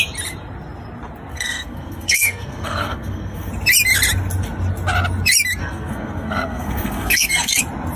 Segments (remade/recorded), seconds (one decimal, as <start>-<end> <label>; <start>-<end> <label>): 0.0-1.3 recorded; 1.3-3.5 remade; 3.5-5.6 recorded; 5.6-7.6 remade; 7.6-8.0 recorded